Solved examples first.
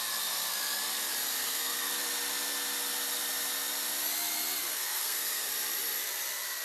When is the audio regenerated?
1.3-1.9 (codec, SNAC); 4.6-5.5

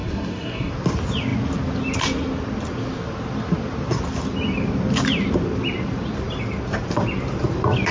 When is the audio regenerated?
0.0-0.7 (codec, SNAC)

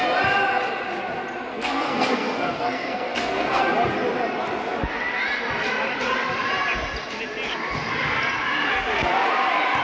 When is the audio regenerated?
1.5-3.6 (codec, SNAC)